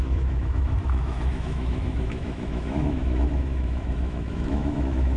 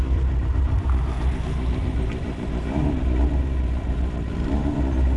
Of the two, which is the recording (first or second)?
second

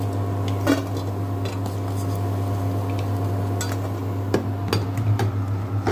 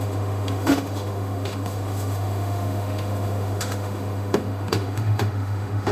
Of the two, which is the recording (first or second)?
first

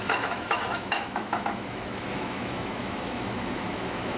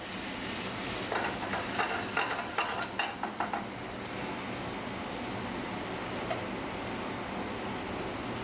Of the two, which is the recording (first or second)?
second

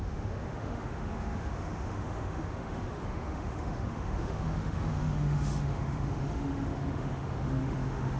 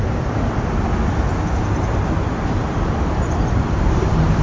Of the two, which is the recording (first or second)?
second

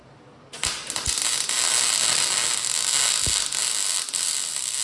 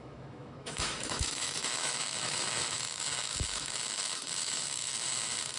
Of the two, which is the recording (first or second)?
first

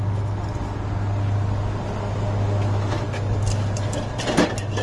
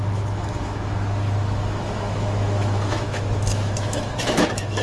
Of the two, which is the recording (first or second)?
first